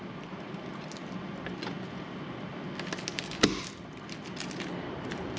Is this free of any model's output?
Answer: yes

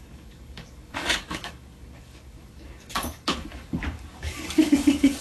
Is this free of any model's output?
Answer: no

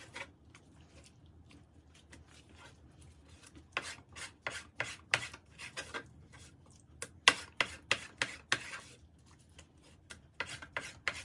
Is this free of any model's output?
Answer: yes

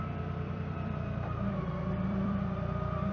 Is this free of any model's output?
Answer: no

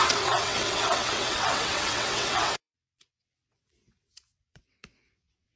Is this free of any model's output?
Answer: no